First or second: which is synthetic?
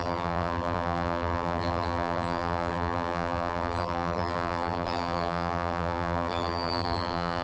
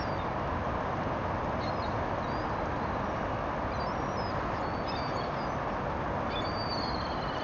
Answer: first